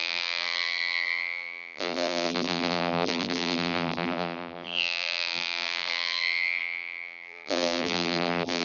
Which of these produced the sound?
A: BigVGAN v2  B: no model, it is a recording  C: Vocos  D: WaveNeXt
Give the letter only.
A